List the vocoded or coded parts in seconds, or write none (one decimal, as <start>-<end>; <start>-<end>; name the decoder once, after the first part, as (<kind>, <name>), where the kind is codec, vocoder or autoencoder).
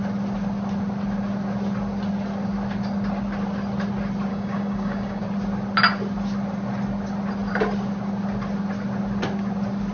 4.3-5.2 (codec, DAC)